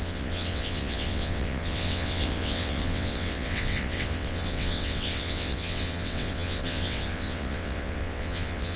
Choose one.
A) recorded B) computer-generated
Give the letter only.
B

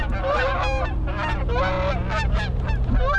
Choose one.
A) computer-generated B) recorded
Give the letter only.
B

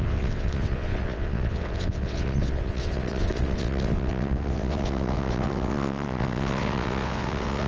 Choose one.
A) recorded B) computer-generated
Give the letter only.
B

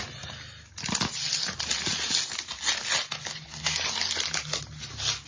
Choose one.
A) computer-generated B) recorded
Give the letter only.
B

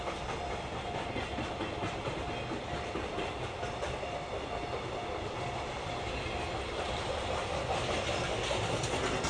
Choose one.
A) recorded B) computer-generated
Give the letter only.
A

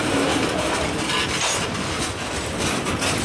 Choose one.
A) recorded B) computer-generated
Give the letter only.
A